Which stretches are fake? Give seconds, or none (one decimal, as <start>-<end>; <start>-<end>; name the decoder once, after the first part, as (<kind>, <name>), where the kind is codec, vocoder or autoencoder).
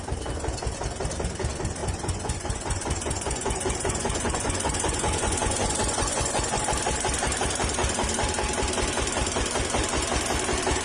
1.8-6.6 (vocoder, Vocos)